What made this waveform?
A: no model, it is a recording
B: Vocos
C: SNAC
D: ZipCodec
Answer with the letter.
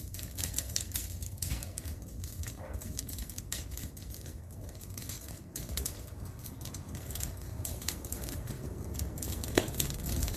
C